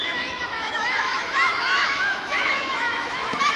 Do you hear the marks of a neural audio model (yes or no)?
yes